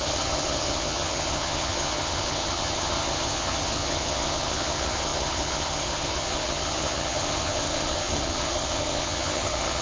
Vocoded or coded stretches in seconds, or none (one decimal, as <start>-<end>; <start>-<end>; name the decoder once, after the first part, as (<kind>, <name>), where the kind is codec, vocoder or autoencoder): 0.0-9.8 (vocoder, HiFi-GAN)